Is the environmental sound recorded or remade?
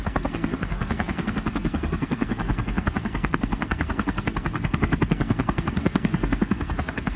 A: remade